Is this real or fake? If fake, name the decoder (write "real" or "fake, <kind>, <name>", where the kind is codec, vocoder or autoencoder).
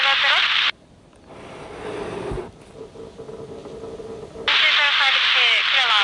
real